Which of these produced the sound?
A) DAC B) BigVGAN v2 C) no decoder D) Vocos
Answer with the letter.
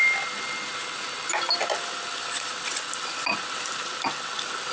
C